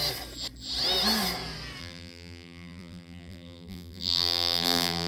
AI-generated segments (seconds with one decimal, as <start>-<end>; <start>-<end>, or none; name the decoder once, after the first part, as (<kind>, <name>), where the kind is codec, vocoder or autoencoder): 1.8-5.1 (vocoder, BigVGAN v2)